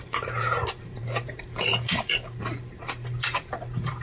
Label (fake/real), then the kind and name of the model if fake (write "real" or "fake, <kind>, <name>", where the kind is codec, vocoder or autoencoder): fake, vocoder, BigVGAN v2